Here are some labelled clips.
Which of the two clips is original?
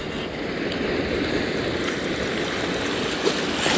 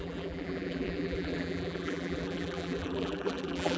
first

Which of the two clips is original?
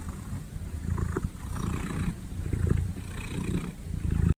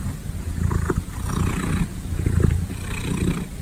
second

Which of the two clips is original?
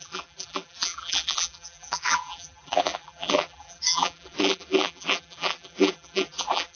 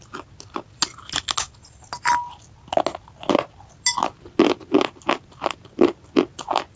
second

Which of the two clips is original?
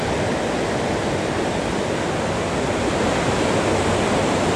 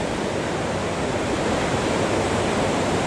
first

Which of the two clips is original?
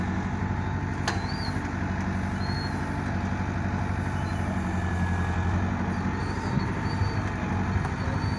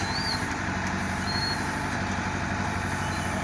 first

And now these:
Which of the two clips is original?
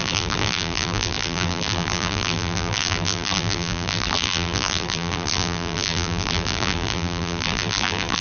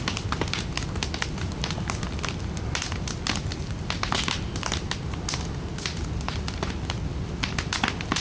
second